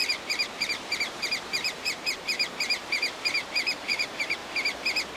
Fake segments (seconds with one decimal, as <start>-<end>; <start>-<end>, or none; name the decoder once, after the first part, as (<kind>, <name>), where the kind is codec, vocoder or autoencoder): 0.0-4.4 (vocoder, BigVGAN v2)

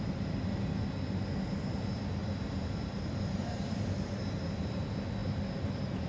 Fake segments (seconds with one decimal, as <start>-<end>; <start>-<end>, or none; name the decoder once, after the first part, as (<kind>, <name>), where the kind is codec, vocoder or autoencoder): 2.2-4.2 (vocoder, BigVGAN v2); 5.2-6.1

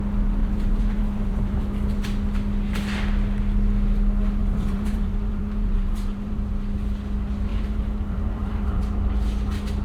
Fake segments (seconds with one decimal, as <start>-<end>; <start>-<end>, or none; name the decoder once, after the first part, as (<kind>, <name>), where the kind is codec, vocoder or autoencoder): 0.4-1.6 (vocoder, BigVGAN v2); 4.4-6.5; 7.5-8.8

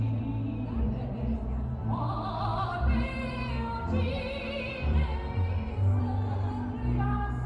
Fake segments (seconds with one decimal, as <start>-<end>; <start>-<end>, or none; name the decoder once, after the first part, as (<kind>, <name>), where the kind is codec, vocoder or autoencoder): 0.0-7.5 (vocoder, BigVGAN v2)

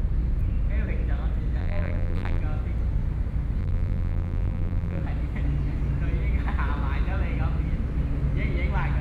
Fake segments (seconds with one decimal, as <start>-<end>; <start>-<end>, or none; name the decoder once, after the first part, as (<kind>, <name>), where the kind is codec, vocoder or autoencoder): 1.6-2.4 (vocoder, BigVGAN v2); 3.6-5.0